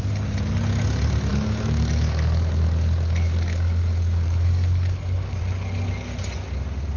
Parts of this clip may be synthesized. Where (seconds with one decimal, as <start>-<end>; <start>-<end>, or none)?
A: 1.3-5.4